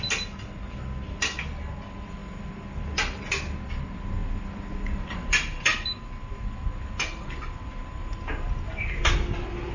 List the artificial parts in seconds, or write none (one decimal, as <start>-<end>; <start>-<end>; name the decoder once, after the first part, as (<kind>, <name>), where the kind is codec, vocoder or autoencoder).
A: none